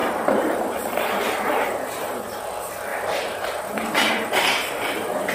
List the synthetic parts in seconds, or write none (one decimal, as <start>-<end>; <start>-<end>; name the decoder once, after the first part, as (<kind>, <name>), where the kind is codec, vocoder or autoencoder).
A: 0.0-2.4 (vocoder, BigVGAN v2); 2.9-5.3